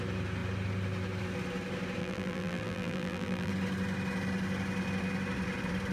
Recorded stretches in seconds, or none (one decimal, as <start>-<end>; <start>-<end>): 0.0-2.0; 3.5-5.9